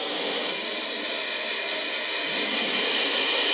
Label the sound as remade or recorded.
recorded